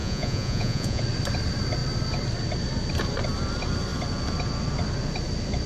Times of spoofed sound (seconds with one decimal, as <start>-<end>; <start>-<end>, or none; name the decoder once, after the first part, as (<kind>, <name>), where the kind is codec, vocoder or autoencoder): 0.0-1.0 (vocoder, Vocos)